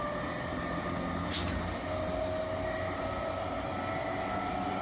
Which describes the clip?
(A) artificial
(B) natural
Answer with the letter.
B